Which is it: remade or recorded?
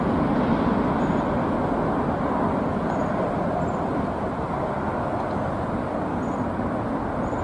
recorded